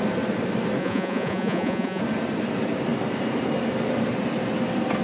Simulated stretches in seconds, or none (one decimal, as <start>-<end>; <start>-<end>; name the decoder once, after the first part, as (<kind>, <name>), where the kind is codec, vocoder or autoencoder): 0.8-2.0 (vocoder, Vocos)